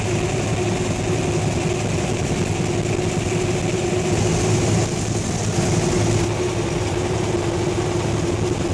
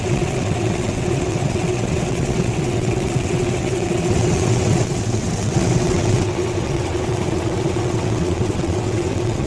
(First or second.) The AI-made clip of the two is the second